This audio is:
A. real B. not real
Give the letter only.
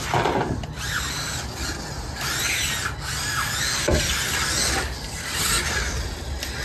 A